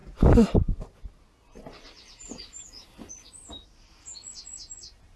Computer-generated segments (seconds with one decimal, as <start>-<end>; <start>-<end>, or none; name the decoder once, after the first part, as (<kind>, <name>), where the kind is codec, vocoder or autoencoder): none